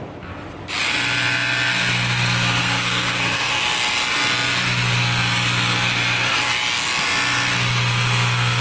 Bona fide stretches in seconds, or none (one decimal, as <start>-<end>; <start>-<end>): 0.0-2.6; 3.5-8.6